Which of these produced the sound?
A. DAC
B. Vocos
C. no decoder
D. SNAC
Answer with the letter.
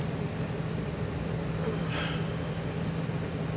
C